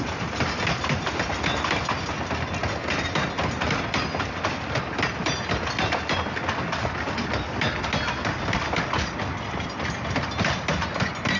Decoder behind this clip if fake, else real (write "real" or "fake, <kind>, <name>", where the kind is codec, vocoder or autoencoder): real